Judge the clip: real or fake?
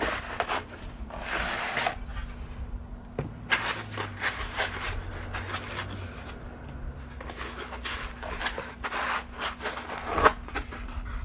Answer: real